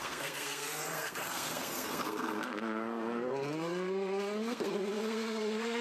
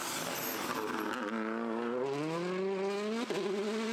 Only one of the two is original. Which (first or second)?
second